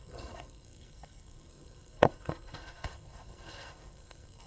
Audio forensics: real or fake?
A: fake